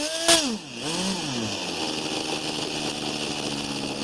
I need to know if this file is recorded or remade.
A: recorded